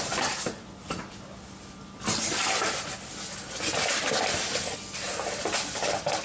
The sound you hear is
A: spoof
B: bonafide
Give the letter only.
B